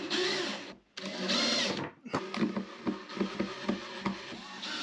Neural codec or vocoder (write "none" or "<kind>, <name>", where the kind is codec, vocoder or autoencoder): none